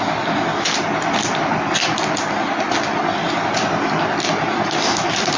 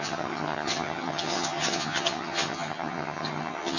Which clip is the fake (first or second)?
second